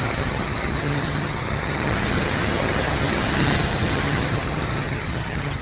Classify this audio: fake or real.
fake